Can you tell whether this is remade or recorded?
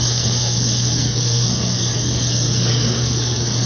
remade